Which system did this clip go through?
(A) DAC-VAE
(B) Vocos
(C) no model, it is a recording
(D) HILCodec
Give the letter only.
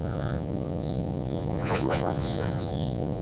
B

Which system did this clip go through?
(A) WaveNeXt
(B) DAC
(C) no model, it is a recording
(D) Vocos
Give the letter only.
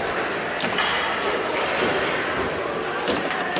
C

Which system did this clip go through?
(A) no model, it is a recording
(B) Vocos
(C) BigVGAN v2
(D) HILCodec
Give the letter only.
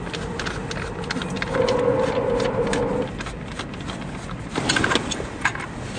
A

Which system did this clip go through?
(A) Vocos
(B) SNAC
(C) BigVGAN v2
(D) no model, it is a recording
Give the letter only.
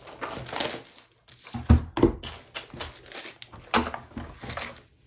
D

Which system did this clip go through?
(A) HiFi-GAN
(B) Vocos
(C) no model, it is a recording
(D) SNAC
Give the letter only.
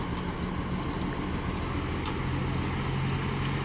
C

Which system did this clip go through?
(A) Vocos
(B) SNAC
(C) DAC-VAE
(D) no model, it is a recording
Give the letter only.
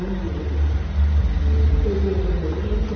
D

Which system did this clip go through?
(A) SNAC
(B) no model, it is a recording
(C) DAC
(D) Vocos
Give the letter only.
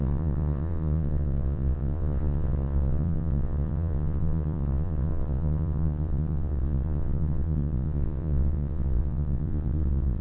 D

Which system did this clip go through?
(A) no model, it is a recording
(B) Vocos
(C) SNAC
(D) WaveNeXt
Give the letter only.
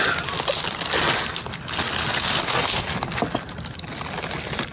A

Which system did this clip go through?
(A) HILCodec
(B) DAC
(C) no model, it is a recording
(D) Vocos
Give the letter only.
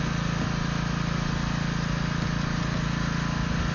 C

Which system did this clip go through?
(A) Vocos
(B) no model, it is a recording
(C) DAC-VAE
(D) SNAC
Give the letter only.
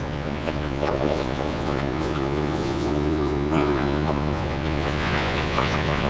A